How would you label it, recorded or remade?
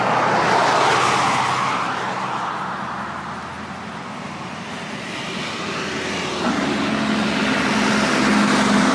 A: recorded